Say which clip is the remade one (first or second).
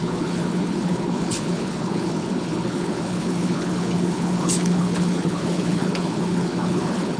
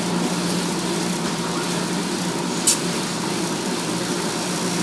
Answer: first